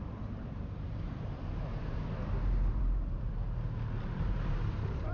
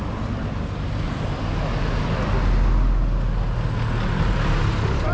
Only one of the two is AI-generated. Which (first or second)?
first